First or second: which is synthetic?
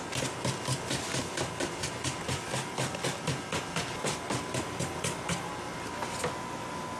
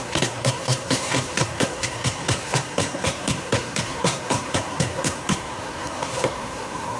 second